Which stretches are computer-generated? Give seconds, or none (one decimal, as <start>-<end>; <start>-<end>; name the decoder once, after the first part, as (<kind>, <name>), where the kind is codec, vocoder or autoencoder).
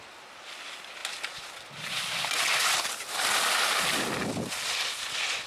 none